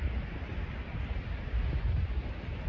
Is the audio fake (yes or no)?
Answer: no